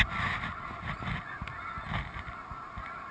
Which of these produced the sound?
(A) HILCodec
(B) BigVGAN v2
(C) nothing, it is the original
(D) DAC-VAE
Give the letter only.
C